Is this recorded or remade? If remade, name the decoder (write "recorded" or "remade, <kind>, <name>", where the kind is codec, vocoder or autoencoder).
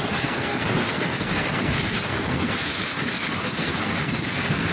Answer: remade, codec, SNAC